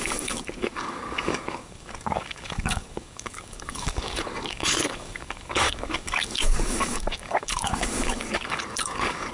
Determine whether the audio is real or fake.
fake